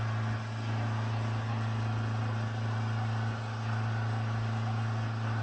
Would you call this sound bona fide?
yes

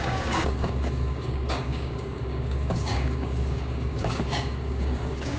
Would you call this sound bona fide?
no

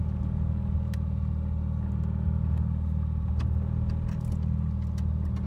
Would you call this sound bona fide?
yes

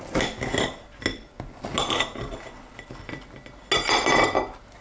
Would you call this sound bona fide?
yes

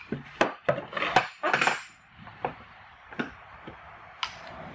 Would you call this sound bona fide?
yes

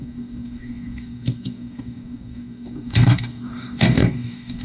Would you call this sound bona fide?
no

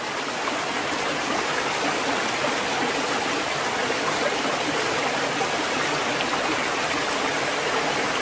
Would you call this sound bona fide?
yes